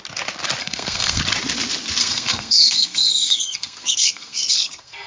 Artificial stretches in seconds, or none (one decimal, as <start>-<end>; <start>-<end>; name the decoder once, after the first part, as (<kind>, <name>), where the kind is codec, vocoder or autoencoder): 0.6-1.2 (codec, SNAC); 2.0-5.1